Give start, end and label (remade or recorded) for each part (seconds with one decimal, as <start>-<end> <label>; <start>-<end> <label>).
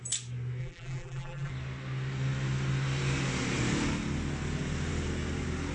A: 0.0-0.6 recorded; 0.6-1.5 remade; 1.5-5.7 recorded